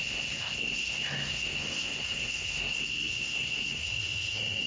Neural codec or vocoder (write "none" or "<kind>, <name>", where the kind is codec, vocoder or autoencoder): codec, SNAC